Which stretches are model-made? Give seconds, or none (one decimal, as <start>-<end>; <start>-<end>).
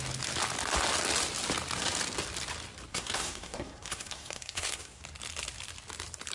2.9-5.0